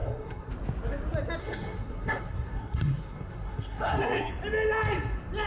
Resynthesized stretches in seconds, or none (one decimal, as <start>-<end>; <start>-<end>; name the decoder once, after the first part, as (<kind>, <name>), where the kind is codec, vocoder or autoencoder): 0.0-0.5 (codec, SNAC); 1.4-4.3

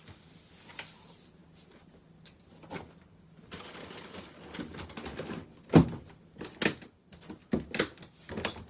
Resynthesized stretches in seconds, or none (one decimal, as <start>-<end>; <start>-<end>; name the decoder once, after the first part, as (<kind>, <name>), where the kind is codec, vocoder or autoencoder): none

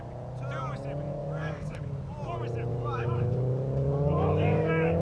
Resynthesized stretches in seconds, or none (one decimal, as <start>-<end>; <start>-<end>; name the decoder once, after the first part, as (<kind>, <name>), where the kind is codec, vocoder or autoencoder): 1.2-1.8 (codec, DAC); 2.7-5.0

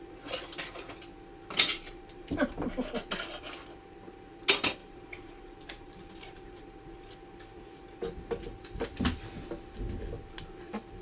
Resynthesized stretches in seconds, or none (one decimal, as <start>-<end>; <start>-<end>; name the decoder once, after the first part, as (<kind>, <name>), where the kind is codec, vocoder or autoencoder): 1.7-2.7 (vocoder, BigVGAN v2); 4.8-6.6

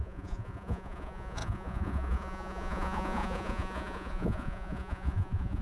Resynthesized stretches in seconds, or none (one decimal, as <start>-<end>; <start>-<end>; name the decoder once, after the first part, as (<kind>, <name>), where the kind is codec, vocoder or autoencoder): 0.0-5.6 (vocoder, Vocos)

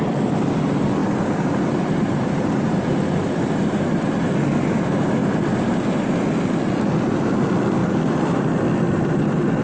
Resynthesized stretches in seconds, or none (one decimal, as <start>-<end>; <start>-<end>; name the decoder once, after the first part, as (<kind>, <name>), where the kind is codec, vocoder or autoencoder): 1.0-3.5 (vocoder, BigVGAN v2); 7.8-8.4

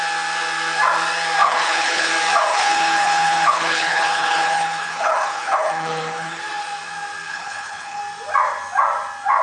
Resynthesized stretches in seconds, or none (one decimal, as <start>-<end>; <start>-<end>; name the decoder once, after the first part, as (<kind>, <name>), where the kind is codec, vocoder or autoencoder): 1.4-2.1 (codec, HILCodec); 2.5-6.4; 7.3-8.0